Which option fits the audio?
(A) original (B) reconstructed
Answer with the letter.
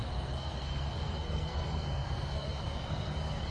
B